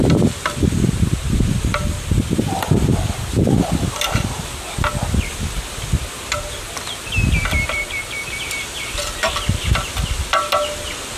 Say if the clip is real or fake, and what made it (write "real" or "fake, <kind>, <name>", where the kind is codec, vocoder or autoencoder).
real